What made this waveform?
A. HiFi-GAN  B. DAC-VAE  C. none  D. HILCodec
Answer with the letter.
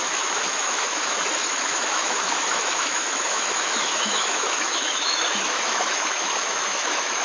B